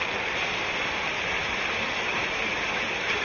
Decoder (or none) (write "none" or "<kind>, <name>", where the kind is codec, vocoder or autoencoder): vocoder, BigVGAN v2